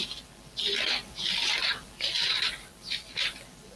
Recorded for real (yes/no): no